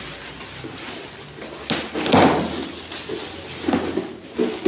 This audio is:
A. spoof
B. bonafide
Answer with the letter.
B